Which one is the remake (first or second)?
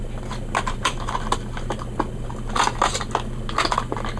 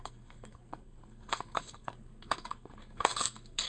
second